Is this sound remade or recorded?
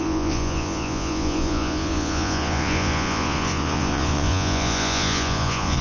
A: remade